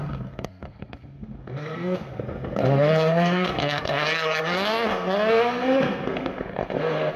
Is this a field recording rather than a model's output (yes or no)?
no